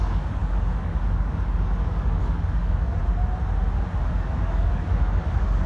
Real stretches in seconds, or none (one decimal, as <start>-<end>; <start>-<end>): 3.0-4.1